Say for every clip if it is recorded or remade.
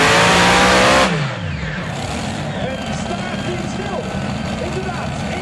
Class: recorded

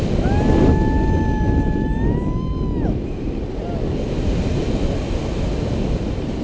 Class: recorded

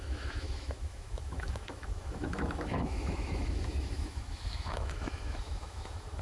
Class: remade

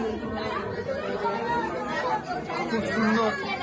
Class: recorded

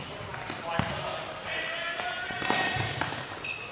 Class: recorded